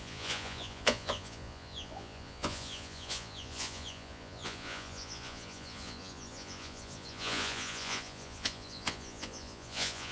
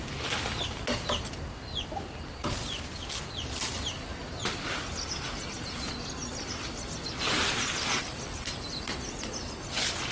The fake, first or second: first